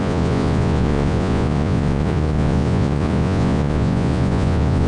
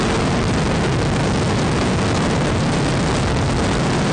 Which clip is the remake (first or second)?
first